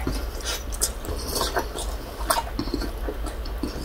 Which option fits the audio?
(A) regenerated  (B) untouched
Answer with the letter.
B